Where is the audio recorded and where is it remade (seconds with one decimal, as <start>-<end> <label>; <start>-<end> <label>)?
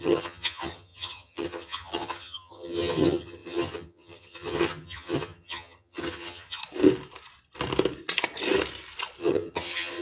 0.0-6.6 remade; 6.6-9.2 recorded; 9.2-10.0 remade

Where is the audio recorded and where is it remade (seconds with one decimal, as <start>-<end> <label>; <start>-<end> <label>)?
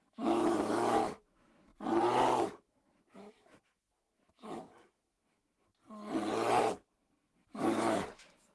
0.0-1.7 remade; 1.7-2.5 recorded; 2.5-5.7 remade; 5.7-6.6 recorded; 6.6-8.5 remade